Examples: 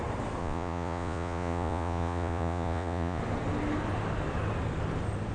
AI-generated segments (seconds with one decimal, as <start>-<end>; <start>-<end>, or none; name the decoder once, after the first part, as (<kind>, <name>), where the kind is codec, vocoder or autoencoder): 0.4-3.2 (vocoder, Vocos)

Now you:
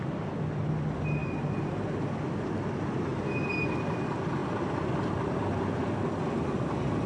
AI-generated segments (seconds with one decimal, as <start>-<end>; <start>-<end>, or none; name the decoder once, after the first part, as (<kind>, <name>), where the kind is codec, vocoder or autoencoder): none

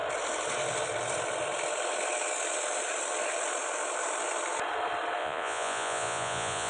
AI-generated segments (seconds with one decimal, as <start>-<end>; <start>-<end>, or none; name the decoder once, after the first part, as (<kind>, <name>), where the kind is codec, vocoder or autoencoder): 5.2-6.7 (vocoder, Vocos)

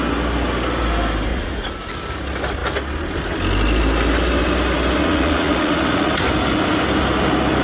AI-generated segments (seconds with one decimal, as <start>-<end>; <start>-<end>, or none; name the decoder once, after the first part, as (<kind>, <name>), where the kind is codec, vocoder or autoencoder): 1.3-1.9 (vocoder, Vocos); 5.0-6.1